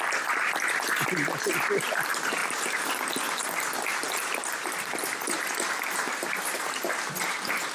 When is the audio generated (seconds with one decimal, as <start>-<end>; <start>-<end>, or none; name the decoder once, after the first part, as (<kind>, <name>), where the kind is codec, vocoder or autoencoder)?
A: 2.4-3.4 (vocoder, BigVGAN v2); 3.9-6.8